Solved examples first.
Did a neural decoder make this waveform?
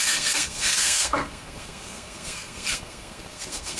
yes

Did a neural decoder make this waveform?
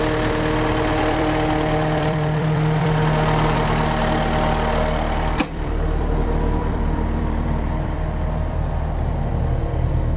yes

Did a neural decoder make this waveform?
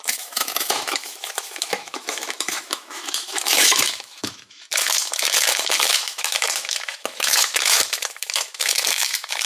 yes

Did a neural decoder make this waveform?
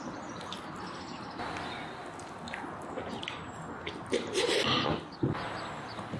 no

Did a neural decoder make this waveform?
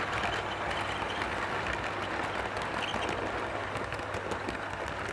no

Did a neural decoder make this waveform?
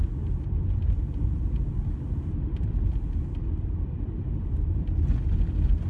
no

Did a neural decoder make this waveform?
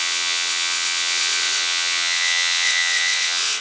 yes